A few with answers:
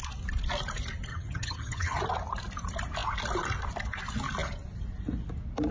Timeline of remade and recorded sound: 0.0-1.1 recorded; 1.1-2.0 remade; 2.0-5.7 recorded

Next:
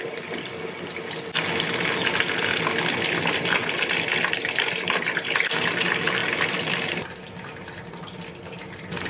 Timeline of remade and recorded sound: 0.0-6.2 recorded; 6.2-7.2 remade; 7.2-9.1 recorded